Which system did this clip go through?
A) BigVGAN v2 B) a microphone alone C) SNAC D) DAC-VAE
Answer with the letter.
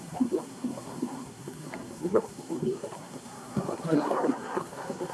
C